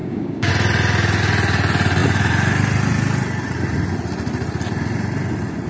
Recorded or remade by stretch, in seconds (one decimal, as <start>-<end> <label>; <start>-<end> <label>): 0.0-0.5 remade; 0.5-5.7 recorded